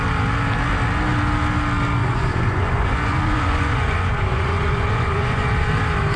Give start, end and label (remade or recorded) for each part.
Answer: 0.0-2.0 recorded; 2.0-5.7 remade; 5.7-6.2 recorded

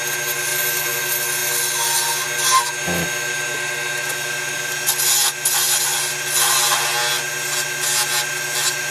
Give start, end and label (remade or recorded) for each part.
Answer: 0.0-0.5 recorded; 0.5-1.0 remade; 1.0-8.9 recorded

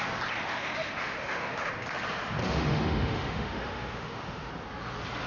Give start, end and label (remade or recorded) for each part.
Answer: 0.0-0.4 recorded; 0.4-1.7 remade; 1.7-2.4 recorded; 2.4-4.5 remade; 4.5-5.3 recorded

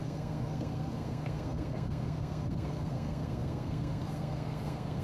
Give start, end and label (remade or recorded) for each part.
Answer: 0.0-5.0 remade

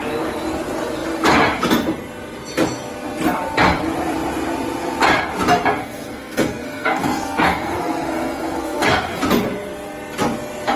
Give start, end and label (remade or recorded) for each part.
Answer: 0.0-5.8 recorded; 5.8-9.2 remade; 9.2-10.8 recorded